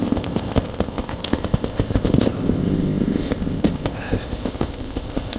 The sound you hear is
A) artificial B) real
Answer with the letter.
A